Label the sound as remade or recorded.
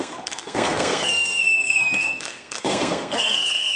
remade